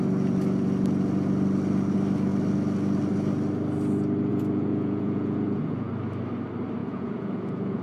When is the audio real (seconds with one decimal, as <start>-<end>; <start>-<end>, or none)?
0.0-4.3; 5.9-6.8